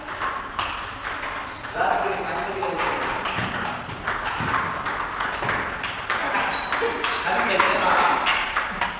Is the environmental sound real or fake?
real